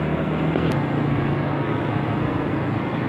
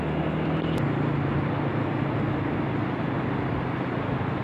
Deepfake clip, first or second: first